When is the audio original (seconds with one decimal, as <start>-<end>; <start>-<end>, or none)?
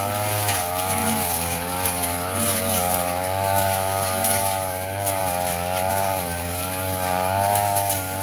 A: 5.2-5.9